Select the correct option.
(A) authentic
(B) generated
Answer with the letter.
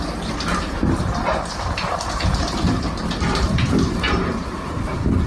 B